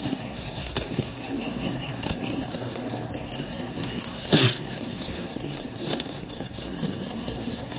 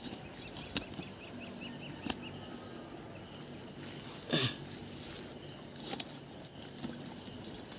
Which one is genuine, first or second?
second